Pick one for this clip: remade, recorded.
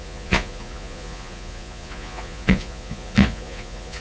remade